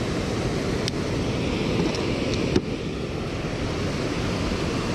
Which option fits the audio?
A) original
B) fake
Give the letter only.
A